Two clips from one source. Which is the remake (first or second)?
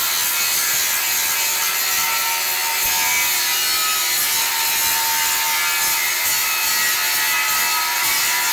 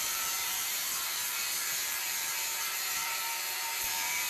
second